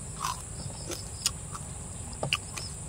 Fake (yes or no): yes